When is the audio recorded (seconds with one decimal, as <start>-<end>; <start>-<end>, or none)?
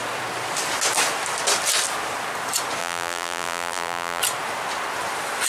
0.0-2.8; 4.2-5.5